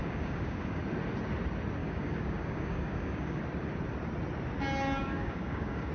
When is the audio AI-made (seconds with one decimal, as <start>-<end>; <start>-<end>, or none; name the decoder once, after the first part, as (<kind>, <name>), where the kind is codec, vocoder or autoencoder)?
0.0-0.8 (codec, DAC); 1.8-3.4; 5.0-5.9